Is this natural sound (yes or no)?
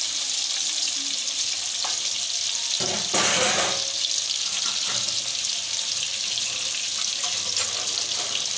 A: yes